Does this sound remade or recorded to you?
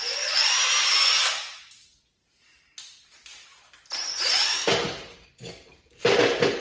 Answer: recorded